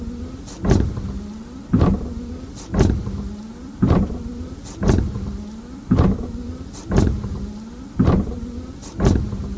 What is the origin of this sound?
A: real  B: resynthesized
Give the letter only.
A